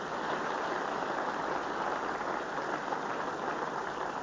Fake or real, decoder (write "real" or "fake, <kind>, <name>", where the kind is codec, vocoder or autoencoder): real